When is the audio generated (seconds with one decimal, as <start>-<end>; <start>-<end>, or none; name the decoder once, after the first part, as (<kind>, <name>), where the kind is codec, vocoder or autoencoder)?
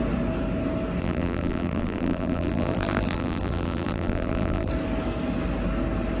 1.0-4.7 (vocoder, BigVGAN v2)